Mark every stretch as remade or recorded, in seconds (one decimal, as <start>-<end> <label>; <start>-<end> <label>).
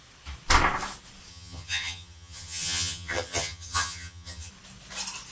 0.0-1.3 recorded; 1.3-4.5 remade; 4.5-5.3 recorded